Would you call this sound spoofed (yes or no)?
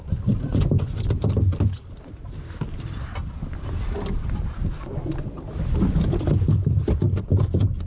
no